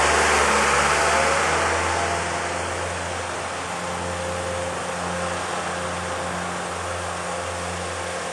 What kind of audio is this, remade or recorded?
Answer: recorded